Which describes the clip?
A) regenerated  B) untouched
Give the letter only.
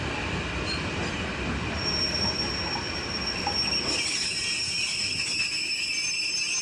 B